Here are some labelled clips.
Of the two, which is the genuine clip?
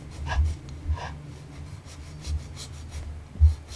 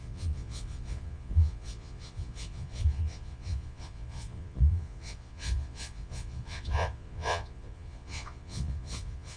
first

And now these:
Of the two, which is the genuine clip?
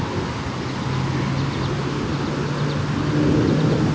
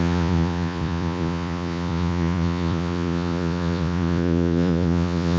first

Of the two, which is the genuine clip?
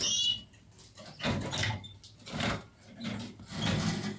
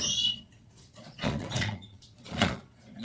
first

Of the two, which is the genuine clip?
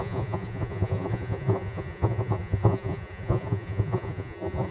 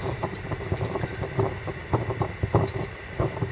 second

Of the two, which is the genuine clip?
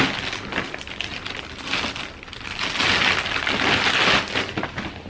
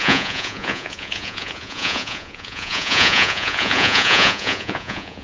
first